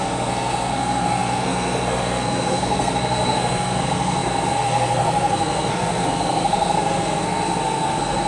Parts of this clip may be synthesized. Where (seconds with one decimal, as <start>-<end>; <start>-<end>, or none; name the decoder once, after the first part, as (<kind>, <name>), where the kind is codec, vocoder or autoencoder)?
0.0-8.3 (codec, SNAC)